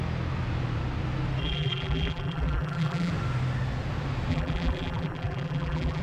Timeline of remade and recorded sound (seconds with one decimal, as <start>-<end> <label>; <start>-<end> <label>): 0.0-1.4 recorded; 1.4-3.1 remade; 3.1-4.3 recorded; 4.3-6.0 remade